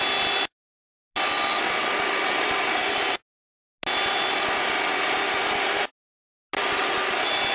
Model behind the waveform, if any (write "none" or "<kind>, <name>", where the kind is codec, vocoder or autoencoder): none